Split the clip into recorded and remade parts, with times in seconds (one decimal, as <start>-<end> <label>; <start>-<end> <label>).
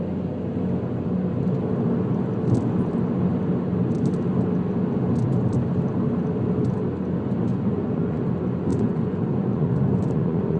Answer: 0.0-7.5 recorded; 7.5-8.2 remade; 8.2-8.7 recorded; 8.7-10.6 remade